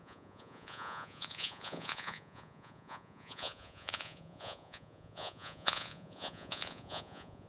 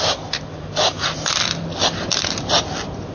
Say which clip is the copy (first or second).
first